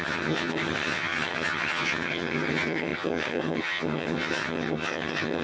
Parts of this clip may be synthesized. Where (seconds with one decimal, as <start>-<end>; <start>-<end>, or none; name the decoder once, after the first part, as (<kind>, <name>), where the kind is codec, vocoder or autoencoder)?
0.0-5.4 (vocoder, HiFi-GAN)